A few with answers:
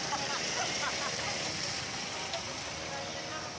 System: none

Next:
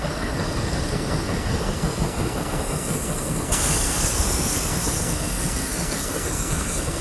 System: codec, SNAC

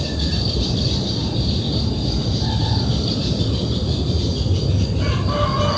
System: none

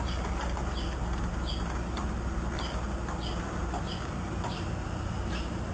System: none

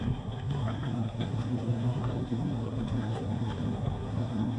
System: codec, SNAC